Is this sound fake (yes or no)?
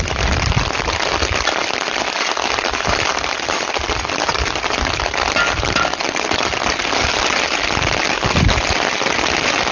no